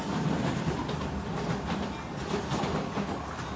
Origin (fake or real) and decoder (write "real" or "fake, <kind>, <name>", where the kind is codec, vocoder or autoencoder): real